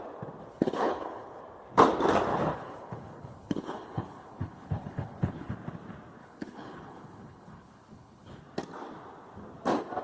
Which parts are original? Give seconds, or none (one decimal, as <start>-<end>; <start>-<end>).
0.0-0.5; 1.4-2.3; 5.5-6.2; 8.4-10.0